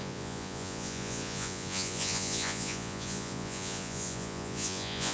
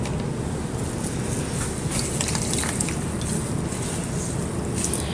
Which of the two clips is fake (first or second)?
first